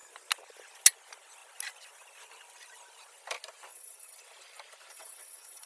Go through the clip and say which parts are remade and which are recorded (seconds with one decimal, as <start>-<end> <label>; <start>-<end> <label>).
0.0-3.7 recorded; 3.7-4.2 remade; 4.2-4.9 recorded; 4.9-5.7 remade